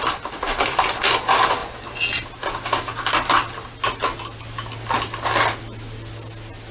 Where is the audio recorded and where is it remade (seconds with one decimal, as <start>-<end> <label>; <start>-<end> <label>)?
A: 0.0-6.7 recorded